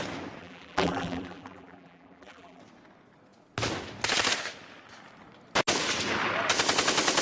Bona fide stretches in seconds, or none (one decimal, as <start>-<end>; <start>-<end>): 0.0-0.4; 2.6-7.2